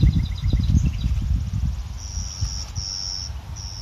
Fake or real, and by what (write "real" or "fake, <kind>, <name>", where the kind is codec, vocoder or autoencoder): real